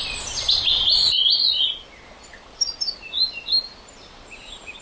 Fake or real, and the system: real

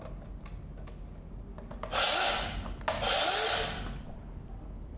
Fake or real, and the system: real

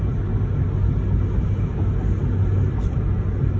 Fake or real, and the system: real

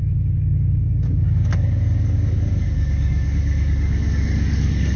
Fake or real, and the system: fake, codec, DAC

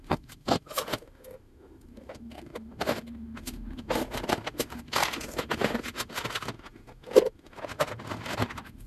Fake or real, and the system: fake, autoencoder, DAC-VAE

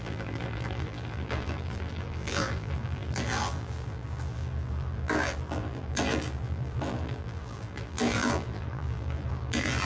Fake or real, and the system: fake, vocoder, BigVGAN v2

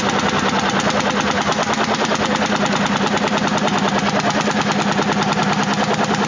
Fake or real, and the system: real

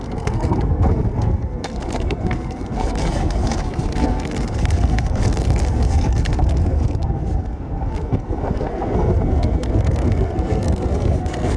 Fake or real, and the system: fake, codec, SNAC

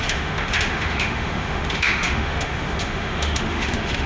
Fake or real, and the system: fake, autoencoder, DAC-VAE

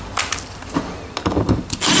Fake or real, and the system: real